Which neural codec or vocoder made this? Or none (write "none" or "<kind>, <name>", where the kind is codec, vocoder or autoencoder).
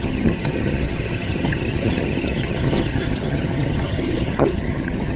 vocoder, HiFi-GAN